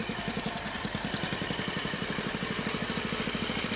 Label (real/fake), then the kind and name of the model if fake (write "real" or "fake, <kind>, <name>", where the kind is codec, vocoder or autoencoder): real